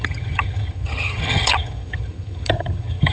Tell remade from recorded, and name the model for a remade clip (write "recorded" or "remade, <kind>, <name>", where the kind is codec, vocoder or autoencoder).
remade, vocoder, HiFi-GAN